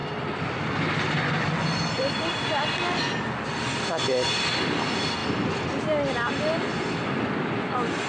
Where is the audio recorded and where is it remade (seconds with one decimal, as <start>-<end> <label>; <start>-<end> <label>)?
0.0-8.1 recorded